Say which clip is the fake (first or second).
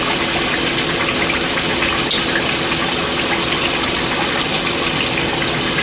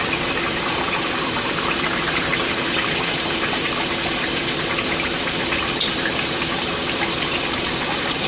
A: second